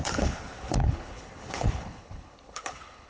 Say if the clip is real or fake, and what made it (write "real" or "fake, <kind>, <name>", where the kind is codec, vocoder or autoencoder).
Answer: fake, codec, HILCodec